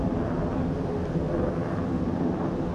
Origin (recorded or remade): recorded